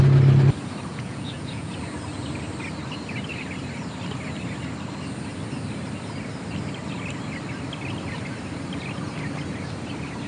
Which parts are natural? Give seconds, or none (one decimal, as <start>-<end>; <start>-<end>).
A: 0.0-0.9; 1.7-10.3